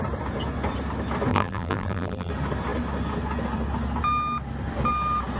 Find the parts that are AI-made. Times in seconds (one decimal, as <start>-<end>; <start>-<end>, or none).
1.3-2.3